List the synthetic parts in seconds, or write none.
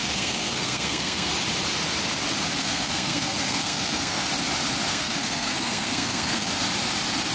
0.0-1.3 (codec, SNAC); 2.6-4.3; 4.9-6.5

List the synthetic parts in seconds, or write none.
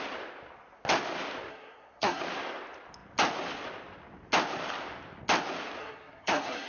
1.5-2.2 (codec, SNAC); 5.8-6.7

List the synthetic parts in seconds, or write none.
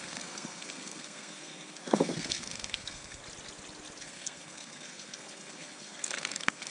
0.0-3.2 (codec, SNAC); 4.0-6.7